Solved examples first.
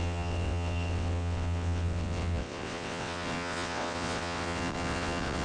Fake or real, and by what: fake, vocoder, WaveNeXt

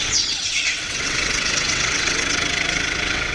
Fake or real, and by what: fake, vocoder, WaveNeXt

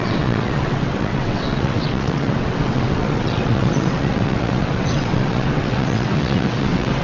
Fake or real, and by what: fake, vocoder, WaveNeXt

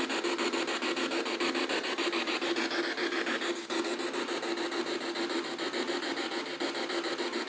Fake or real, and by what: real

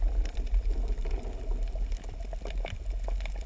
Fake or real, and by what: real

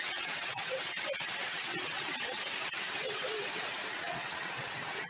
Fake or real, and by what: fake, vocoder, WaveNeXt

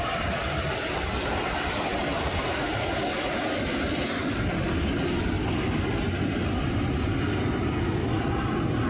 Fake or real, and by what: real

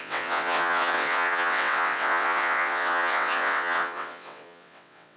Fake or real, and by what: fake, vocoder, WaveNeXt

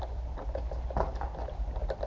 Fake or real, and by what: real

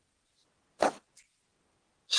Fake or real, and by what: real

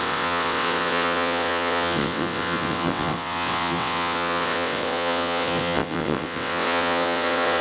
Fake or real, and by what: fake, vocoder, WaveNeXt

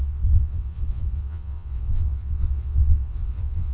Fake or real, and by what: fake, vocoder, WaveNeXt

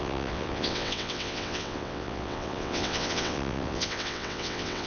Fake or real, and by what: fake, vocoder, WaveNeXt